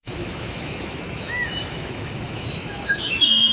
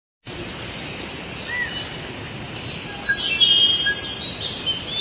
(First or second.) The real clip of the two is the second